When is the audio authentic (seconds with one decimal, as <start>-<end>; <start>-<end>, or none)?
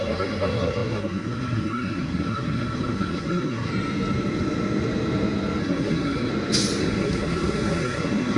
3.7-5.6; 6.3-6.8